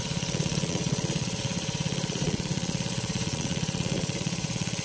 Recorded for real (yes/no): no